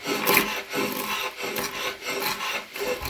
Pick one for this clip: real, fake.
real